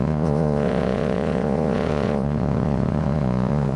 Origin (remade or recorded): remade